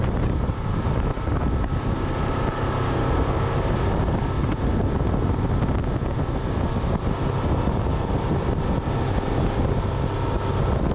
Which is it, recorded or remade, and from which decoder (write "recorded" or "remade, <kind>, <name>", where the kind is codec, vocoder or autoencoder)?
recorded